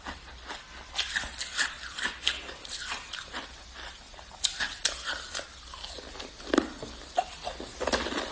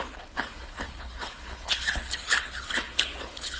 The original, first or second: first